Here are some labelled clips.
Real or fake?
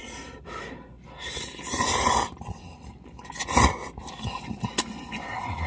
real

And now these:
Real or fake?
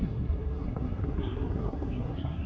fake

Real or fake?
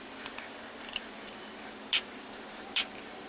real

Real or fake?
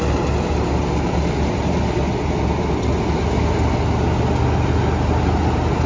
real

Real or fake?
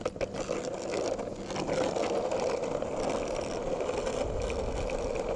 real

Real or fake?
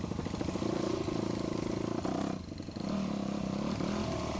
real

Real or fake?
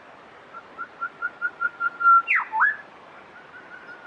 real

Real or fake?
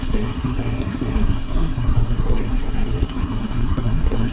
fake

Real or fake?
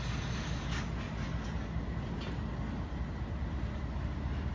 real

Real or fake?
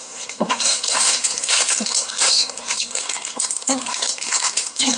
fake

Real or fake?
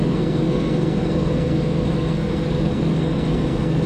fake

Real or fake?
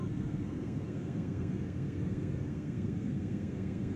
fake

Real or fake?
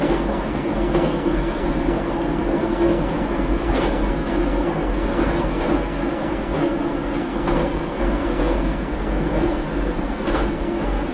fake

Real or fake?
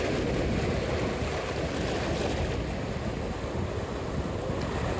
real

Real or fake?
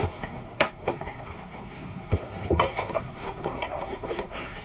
fake